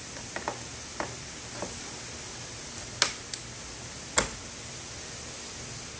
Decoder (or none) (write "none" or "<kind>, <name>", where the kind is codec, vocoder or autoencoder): none